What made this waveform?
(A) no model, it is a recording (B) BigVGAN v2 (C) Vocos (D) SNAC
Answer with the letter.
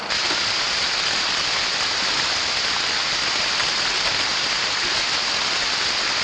A